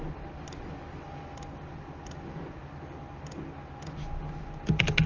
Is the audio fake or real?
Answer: real